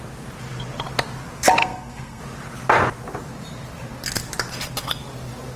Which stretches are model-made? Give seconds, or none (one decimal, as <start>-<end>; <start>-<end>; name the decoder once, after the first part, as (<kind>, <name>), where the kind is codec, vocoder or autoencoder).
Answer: 1.6-2.2 (codec, SNAC)